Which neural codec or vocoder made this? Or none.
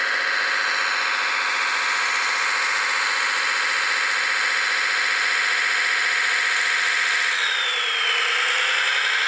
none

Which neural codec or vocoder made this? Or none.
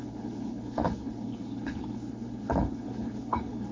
codec, HILCodec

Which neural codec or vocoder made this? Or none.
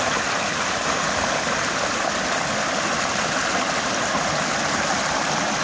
none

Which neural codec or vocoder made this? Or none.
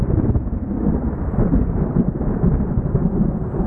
none